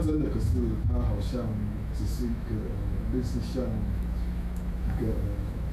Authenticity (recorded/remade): remade